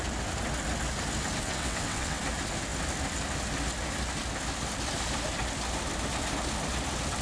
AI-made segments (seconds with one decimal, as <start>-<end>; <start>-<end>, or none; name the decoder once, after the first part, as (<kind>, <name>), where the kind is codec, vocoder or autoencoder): 1.4-2.2 (vocoder, WaveNeXt)